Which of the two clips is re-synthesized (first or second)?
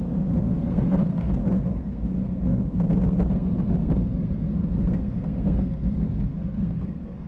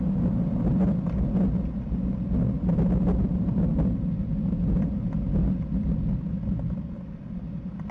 first